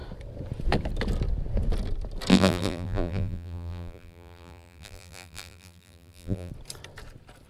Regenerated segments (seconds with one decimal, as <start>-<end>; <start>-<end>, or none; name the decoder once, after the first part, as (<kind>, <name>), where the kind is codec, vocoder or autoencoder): 2.3-6.5 (vocoder, BigVGAN v2)